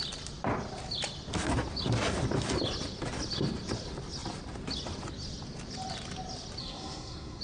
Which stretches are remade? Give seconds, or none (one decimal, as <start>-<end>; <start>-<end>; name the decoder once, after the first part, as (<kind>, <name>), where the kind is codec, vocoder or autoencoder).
6.6-7.4 (codec, SNAC)

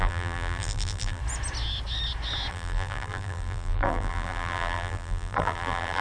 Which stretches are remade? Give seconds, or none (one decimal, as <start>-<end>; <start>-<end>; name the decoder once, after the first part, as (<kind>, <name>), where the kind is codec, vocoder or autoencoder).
0.0-1.2 (vocoder, BigVGAN v2); 2.5-6.0